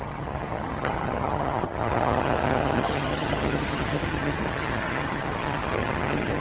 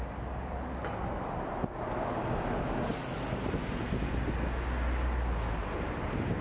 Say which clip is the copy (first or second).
first